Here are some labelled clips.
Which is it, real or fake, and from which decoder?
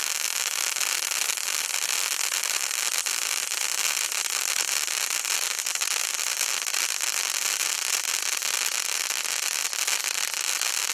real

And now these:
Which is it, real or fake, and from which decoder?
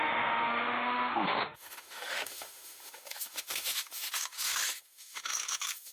fake, autoencoder, DAC-VAE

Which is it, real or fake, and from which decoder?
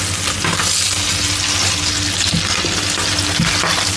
real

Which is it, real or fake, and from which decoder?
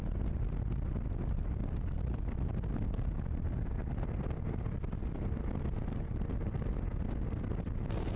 real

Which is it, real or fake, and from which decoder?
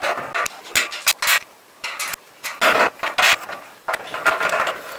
real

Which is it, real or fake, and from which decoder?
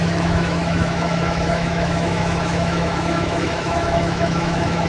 fake, autoencoder, DAC-VAE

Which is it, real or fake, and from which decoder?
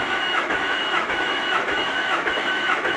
fake, autoencoder, DAC-VAE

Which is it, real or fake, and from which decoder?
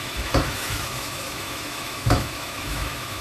fake, autoencoder, DAC-VAE